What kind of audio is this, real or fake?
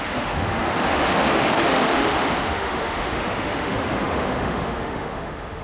fake